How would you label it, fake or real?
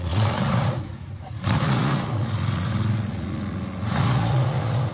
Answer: fake